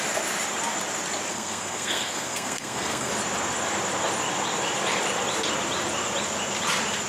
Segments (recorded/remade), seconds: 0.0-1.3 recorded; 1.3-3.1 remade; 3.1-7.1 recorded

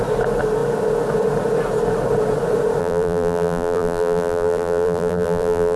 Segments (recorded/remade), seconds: 0.0-2.8 recorded; 2.8-5.8 remade